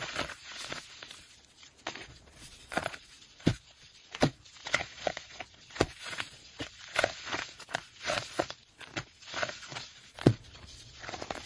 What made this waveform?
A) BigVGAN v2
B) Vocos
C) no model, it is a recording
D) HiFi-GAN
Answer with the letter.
B